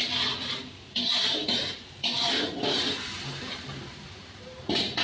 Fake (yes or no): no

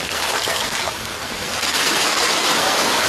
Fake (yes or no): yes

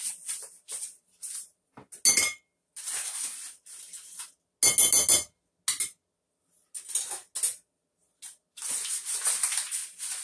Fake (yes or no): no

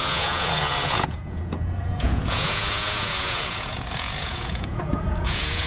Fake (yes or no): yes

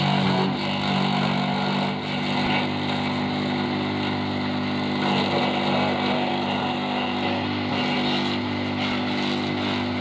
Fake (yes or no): no